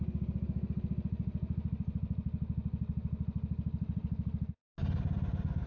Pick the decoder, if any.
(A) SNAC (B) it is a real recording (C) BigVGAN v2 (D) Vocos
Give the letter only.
B